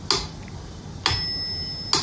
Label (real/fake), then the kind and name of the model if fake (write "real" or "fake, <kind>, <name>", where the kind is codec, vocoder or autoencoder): real